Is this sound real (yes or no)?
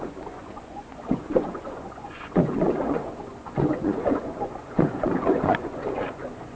no